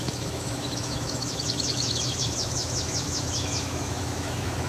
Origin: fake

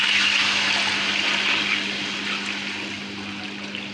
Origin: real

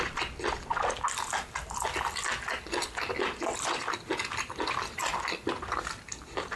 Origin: real